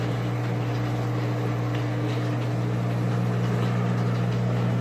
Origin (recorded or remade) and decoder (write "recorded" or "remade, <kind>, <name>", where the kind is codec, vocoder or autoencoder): recorded